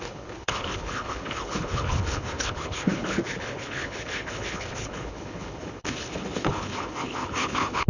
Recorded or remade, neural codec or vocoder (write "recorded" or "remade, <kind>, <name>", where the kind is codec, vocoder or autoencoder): remade, codec, HILCodec